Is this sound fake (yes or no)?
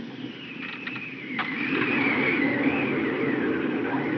no